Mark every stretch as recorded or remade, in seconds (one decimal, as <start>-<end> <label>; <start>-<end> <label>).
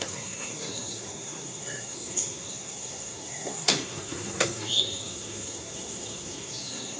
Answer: 0.0-7.0 remade